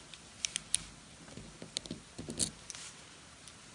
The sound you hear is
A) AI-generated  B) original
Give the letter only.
B